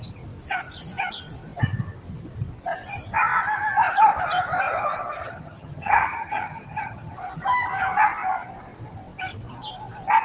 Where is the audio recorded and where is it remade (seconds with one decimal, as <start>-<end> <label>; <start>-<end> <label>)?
0.0-5.2 recorded; 5.2-7.2 remade; 7.2-10.2 recorded